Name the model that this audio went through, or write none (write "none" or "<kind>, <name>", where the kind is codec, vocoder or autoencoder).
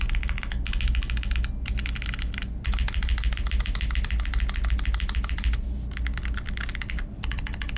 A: none